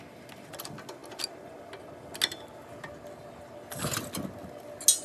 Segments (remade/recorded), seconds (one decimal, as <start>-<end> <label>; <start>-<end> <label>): 0.0-5.0 recorded